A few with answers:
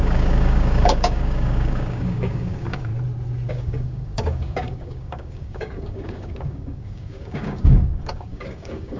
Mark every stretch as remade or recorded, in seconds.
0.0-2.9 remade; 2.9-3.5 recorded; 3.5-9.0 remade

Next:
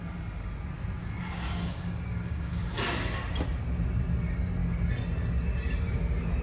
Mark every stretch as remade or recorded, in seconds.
0.0-1.0 recorded; 1.0-2.7 remade; 2.7-6.4 recorded

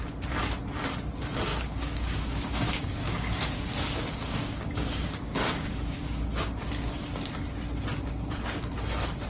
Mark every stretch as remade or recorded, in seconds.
0.0-1.5 recorded; 1.5-6.6 remade; 6.6-9.3 recorded